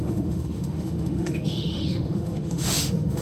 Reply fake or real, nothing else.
fake